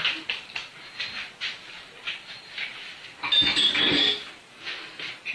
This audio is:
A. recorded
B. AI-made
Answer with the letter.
A